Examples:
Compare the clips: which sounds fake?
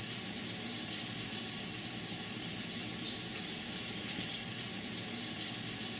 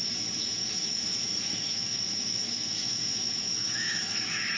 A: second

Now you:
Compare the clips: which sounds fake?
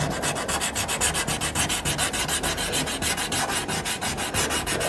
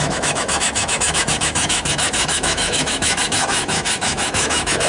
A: second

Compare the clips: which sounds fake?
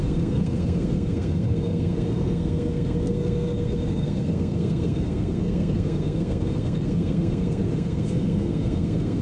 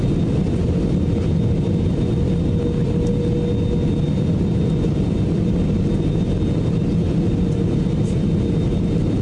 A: first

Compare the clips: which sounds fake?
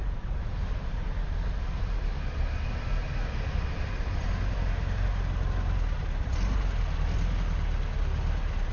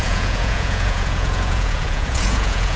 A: second